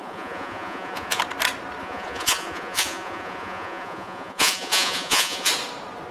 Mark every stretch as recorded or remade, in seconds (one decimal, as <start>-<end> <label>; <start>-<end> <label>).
0.0-1.2 remade; 1.2-1.8 recorded; 1.8-5.5 remade; 5.5-6.1 recorded